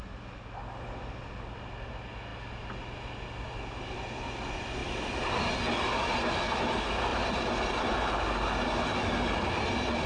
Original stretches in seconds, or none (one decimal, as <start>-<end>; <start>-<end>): 0.0-4.8; 5.3-7.1; 7.8-10.1

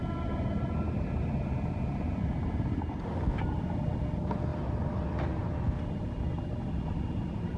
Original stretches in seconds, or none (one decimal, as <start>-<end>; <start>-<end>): 0.0-7.6

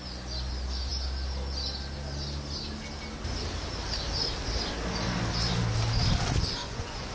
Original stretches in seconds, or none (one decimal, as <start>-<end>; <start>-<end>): 0.0-6.6